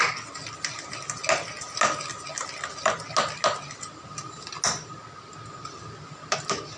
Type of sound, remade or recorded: recorded